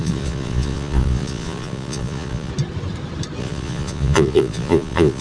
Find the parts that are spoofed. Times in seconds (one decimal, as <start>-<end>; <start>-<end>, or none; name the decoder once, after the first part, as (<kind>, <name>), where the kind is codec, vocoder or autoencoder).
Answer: 0.0-2.5 (vocoder, Vocos); 3.4-5.2